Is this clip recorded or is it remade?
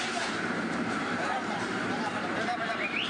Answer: remade